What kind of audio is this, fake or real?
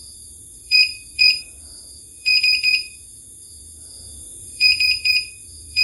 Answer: fake